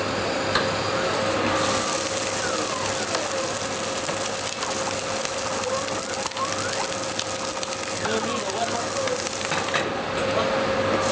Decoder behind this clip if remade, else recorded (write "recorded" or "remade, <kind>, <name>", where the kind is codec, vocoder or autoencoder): recorded